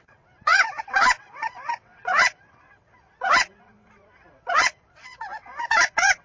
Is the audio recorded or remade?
remade